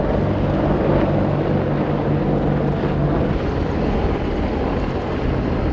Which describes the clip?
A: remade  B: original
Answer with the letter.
B